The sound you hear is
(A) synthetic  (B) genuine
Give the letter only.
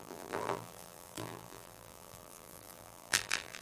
A